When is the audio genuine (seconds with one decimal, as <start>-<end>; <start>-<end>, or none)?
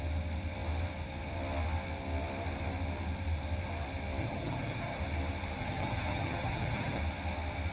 0.0-4.2; 5.0-5.6; 7.0-7.7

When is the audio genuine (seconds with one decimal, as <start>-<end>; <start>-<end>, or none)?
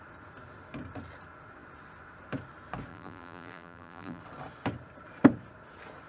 0.0-2.9; 4.2-6.1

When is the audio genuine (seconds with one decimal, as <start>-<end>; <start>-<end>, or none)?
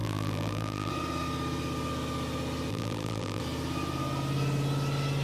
0.9-2.7; 3.4-5.2